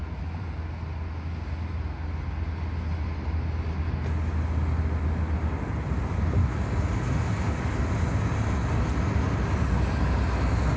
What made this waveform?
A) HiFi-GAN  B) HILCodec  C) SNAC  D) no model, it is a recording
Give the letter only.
D